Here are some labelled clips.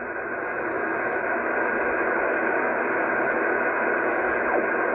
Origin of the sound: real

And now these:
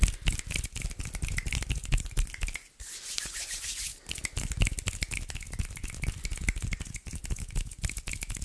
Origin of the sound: real